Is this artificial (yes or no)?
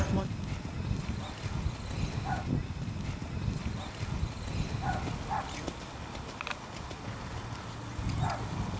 no